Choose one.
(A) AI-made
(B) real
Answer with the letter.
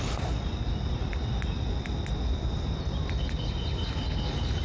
B